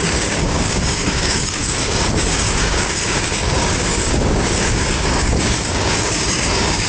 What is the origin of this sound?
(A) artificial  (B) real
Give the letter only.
A